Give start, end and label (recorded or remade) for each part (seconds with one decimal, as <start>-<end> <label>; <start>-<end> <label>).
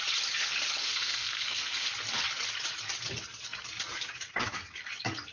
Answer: 0.0-0.8 recorded; 0.8-1.9 remade; 1.9-5.3 recorded